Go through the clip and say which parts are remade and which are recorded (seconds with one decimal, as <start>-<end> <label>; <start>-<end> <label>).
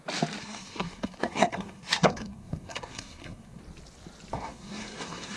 0.0-0.4 recorded; 0.4-3.6 remade; 3.6-4.3 recorded; 4.3-5.4 remade